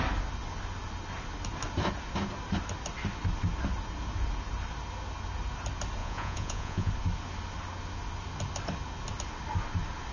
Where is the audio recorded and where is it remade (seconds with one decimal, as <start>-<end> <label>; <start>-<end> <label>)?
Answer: 0.0-6.0 recorded; 6.0-6.9 remade; 6.9-10.1 recorded